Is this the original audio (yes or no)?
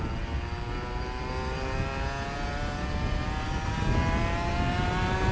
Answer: yes